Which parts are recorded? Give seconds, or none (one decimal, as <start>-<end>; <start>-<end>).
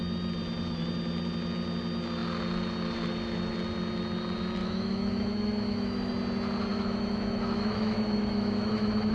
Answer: 0.0-4.6; 6.1-6.7